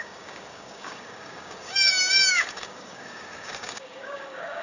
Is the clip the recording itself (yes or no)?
no